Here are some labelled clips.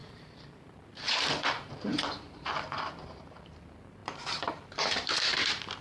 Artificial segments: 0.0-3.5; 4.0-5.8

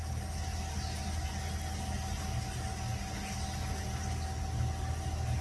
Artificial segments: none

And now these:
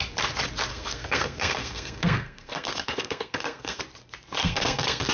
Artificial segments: 0.7-3.8; 4.4-5.1

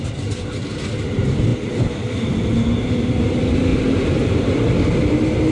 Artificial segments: none

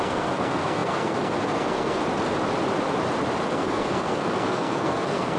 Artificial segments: 0.0-2.0; 3.5-5.4